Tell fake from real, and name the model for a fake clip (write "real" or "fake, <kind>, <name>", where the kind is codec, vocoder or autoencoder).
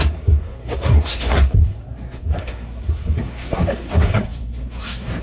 fake, codec, SNAC